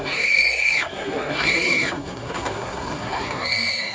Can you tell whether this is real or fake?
fake